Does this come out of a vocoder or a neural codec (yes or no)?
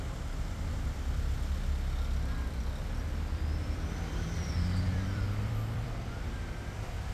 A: yes